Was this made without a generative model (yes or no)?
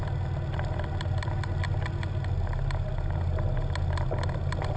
yes